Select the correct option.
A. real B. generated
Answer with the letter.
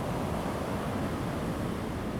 A